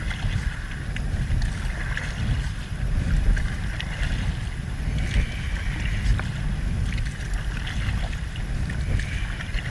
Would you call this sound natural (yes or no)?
yes